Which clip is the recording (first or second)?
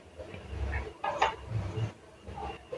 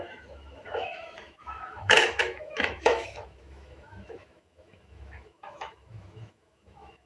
first